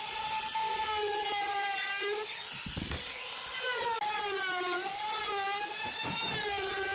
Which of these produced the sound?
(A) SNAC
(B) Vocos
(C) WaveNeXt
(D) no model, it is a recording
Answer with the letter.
D